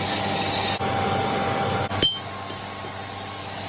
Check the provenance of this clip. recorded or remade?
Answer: recorded